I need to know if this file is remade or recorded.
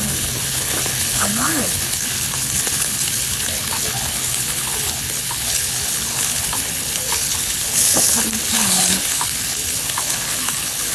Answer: remade